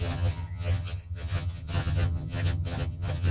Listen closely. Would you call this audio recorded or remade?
remade